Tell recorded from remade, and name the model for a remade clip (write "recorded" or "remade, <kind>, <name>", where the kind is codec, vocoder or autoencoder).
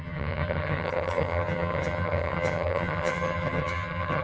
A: remade, vocoder, HiFi-GAN